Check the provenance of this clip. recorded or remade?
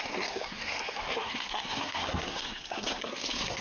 remade